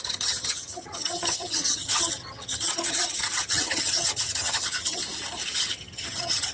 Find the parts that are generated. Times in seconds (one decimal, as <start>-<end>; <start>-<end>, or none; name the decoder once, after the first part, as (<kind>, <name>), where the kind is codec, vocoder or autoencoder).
0.0-5.0 (vocoder, HiFi-GAN); 5.5-6.5